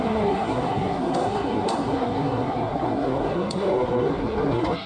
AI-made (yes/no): yes